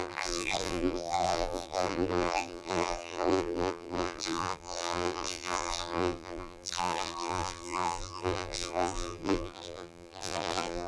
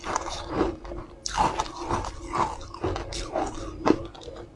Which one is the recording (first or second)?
second